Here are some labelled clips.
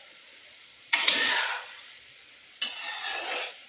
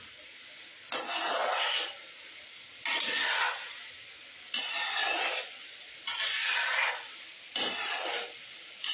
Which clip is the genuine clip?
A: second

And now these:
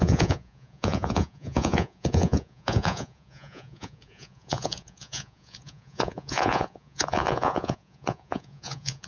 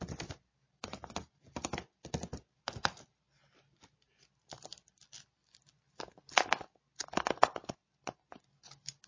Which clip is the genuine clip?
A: second